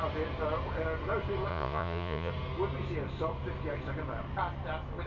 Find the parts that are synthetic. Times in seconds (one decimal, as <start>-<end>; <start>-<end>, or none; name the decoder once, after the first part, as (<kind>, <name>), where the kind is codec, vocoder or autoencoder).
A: 1.5-2.3 (vocoder, Vocos)